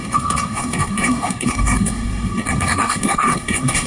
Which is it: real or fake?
fake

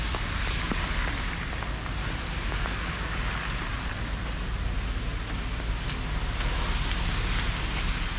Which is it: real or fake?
real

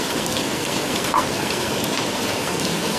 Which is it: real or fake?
fake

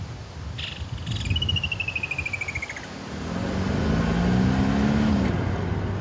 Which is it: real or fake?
real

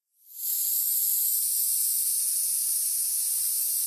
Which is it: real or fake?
real